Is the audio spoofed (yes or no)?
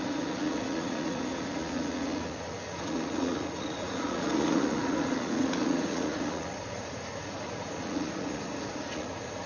yes